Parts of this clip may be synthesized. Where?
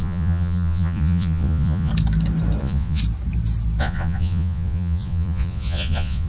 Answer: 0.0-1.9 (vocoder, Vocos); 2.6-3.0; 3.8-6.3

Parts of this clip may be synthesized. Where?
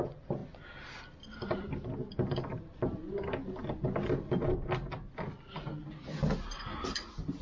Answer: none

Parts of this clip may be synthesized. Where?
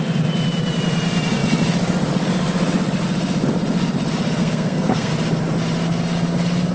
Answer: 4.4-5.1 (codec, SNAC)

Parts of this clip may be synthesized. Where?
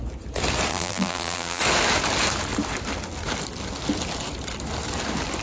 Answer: 0.7-1.6 (vocoder, BigVGAN v2)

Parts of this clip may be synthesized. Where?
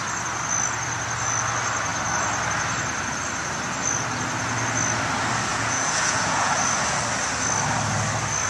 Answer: 5.5-6.5 (vocoder, Vocos)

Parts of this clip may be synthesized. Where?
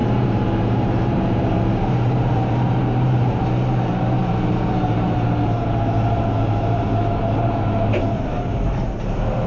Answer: 0.0-9.5 (vocoder, BigVGAN v2)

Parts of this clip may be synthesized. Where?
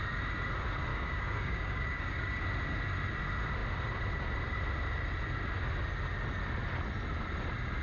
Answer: 0.9-2.4 (codec, DAC)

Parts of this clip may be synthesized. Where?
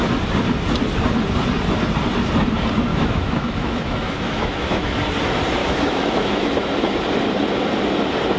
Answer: 2.9-5.0 (autoencoder, DAC-VAE); 5.6-6.7